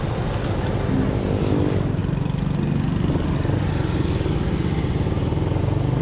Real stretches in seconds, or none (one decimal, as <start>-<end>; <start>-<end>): 0.0-6.0